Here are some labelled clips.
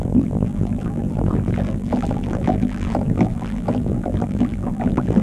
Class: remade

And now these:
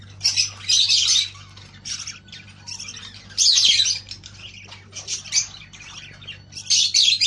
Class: recorded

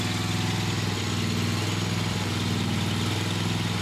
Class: recorded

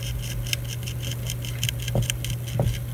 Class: recorded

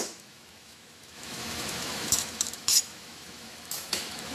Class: remade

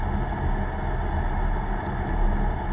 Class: recorded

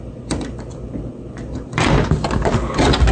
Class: recorded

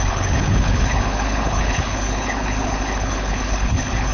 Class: remade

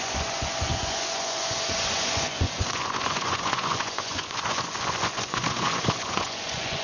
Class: remade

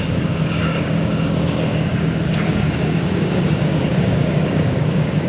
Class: remade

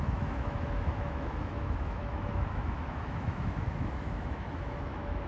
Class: remade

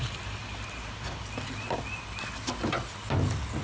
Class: recorded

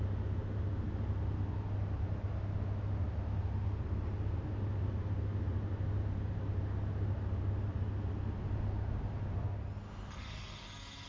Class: recorded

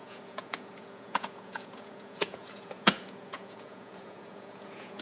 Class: remade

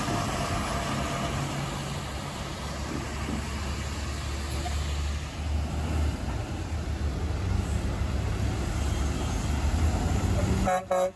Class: recorded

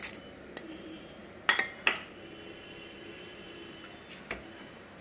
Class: recorded